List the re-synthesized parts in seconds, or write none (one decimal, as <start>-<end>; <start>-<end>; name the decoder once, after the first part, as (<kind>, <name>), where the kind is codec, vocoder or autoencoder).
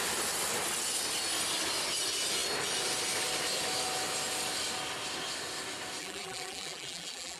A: 6.0-7.4 (vocoder, BigVGAN v2)